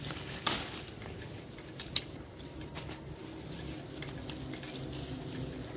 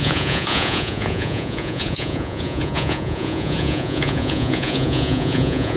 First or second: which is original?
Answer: first